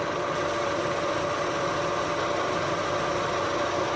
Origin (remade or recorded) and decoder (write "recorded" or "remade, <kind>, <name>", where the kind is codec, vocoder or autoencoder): recorded